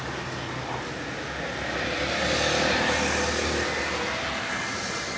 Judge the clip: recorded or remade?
recorded